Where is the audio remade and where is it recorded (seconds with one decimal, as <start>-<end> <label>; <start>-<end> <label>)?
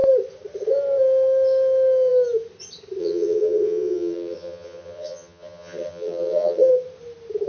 0.0-3.0 recorded; 3.0-6.7 remade; 6.7-7.5 recorded